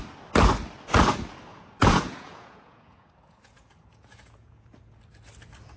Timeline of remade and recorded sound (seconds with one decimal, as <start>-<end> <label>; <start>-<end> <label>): 0.0-1.5 recorded; 1.5-5.0 remade; 5.0-5.8 recorded